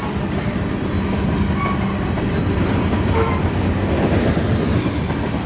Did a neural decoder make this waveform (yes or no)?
no